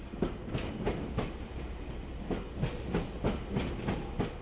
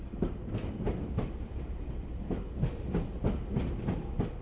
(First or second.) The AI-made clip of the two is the second